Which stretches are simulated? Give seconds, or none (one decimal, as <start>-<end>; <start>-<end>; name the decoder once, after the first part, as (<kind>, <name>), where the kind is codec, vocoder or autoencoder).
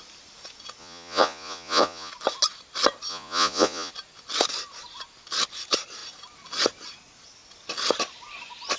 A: 0.8-2.1 (vocoder, Vocos); 3.1-3.9